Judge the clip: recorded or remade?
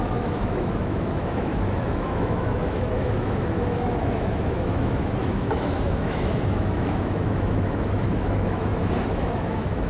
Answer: remade